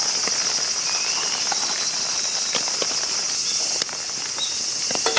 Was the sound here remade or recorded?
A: recorded